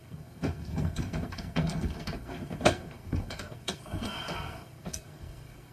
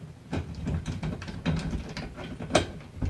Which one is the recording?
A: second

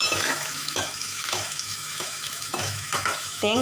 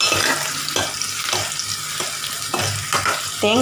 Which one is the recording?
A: second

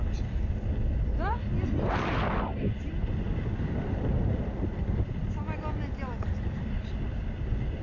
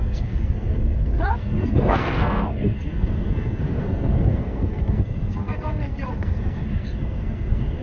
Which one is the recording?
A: first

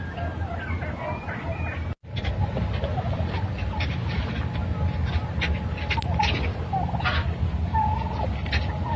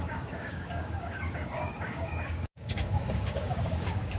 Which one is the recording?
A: first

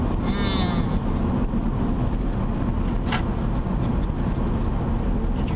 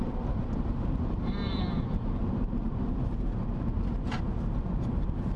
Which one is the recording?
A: first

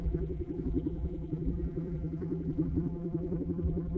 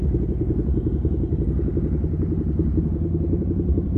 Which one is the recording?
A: second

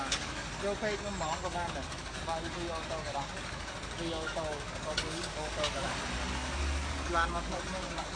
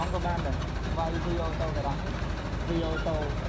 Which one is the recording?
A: second